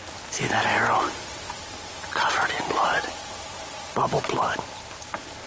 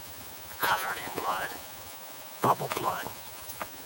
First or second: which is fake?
second